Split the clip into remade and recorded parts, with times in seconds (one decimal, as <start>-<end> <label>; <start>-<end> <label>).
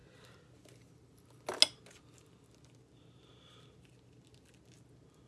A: 0.0-5.3 recorded